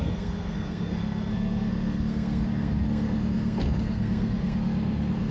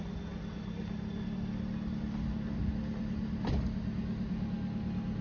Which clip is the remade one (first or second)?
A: first